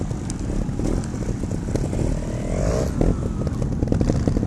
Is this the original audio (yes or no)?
yes